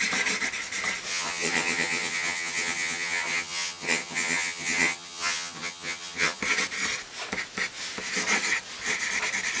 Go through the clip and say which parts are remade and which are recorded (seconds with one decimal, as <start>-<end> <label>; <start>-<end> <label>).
0.0-1.1 recorded; 1.1-6.4 remade; 6.4-9.6 recorded